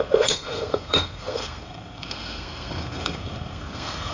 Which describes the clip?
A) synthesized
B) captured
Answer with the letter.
A